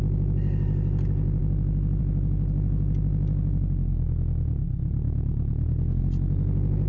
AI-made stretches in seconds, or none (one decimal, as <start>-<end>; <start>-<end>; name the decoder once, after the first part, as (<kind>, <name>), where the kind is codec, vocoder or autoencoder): none